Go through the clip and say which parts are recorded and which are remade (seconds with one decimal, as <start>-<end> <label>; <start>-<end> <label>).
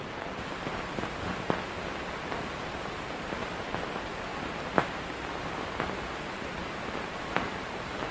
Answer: 0.0-1.0 remade; 1.0-2.6 recorded; 2.6-4.3 remade; 4.3-6.3 recorded; 6.3-8.1 remade